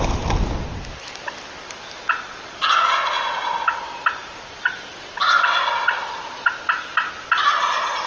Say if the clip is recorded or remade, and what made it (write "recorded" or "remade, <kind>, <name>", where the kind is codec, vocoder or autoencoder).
recorded